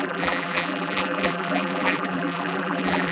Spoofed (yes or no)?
yes